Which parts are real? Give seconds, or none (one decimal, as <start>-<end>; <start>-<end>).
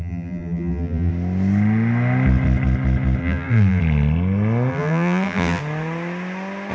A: 1.1-3.2; 3.8-4.7; 5.6-6.7